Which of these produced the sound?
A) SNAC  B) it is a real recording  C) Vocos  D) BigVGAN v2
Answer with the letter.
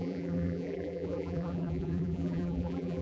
D